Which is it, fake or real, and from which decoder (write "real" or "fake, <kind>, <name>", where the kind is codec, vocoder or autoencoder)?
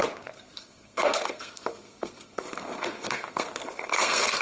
fake, codec, SNAC